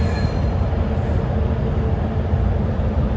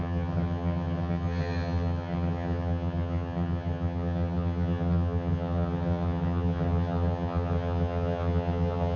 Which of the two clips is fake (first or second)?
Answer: second